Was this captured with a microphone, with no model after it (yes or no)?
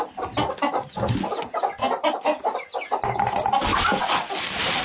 yes